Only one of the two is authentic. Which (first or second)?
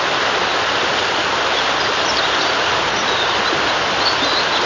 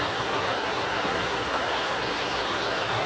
first